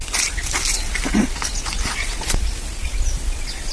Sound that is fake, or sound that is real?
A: real